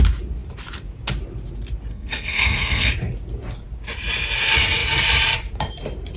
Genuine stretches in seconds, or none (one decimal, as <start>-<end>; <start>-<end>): 0.0-1.9; 2.9-6.2